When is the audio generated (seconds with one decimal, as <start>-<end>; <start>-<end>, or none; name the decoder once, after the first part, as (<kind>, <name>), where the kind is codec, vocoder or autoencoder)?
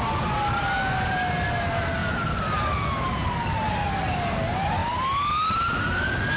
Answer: none